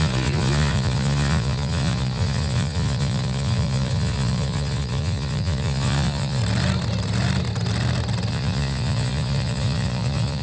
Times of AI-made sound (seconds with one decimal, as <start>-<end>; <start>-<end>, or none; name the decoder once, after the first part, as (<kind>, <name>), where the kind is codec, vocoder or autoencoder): 0.0-6.4 (vocoder, Vocos); 8.3-10.4